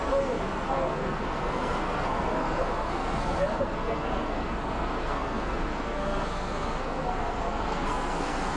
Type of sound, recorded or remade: remade